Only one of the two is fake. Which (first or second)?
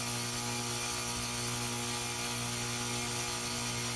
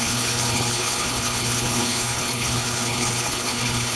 second